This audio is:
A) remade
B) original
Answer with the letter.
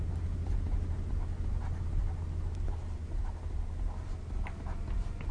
B